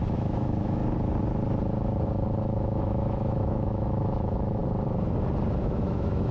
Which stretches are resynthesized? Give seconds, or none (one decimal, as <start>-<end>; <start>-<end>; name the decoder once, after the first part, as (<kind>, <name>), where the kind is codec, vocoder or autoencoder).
0.0-0.8 (autoencoder, DAC-VAE); 2.4-4.6; 5.6-6.3